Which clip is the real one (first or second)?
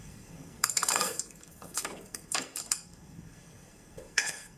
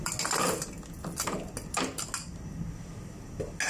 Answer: second